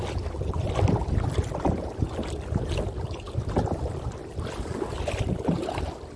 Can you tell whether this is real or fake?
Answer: real